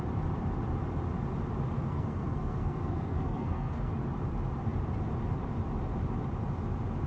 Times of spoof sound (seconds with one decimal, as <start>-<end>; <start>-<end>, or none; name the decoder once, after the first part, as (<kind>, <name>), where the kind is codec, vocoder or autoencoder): 1.9-3.9 (codec, SNAC)